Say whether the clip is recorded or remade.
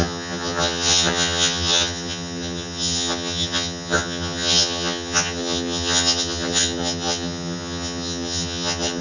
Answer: remade